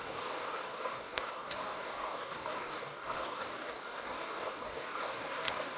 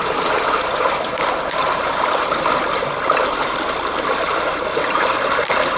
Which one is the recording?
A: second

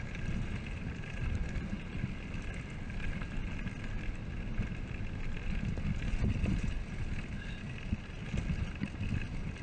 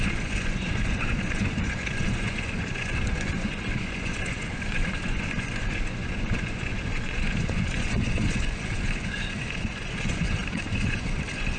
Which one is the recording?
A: first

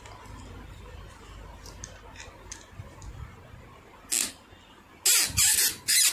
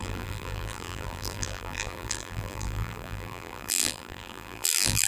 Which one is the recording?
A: first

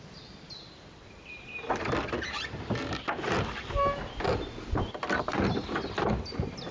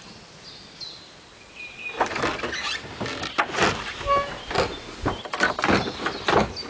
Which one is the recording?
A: second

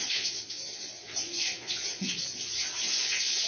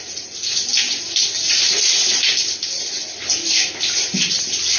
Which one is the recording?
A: second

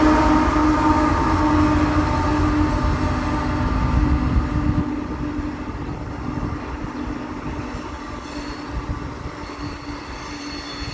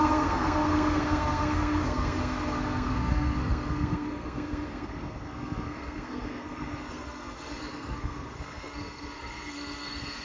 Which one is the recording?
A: first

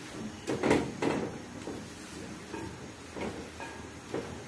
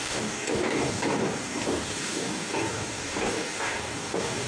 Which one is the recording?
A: first